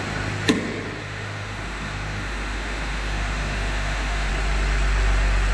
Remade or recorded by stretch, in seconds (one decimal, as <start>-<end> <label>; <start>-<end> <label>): 0.0-1.0 recorded; 1.0-4.3 remade; 4.3-5.5 recorded